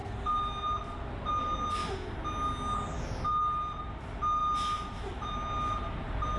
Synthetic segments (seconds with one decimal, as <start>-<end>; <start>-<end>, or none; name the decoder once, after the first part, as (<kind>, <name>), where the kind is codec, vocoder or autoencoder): none